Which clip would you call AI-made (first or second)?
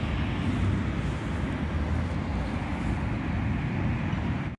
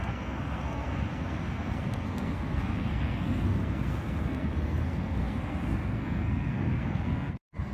second